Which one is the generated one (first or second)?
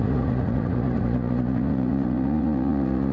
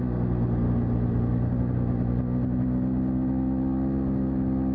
first